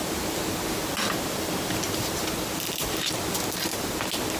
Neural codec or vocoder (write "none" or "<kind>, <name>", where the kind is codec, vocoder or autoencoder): none